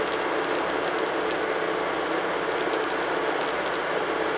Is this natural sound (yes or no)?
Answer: yes